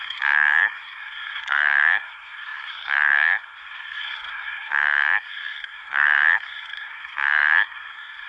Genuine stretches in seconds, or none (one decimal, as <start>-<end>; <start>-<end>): none